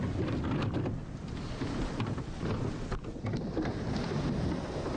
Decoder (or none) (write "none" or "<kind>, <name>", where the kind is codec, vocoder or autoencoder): none